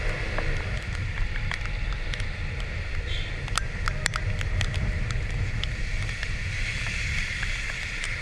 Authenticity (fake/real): fake